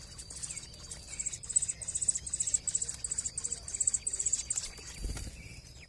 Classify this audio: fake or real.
real